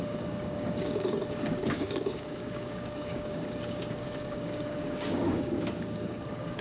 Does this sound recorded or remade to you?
remade